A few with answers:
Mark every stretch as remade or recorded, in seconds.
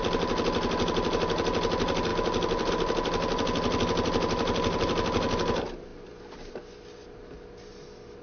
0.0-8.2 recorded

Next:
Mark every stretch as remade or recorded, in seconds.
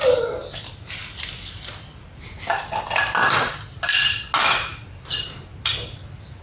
0.0-0.4 recorded; 0.4-4.2 remade; 4.2-4.7 recorded; 4.7-5.7 remade; 5.7-6.4 recorded